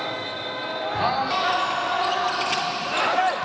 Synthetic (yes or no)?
no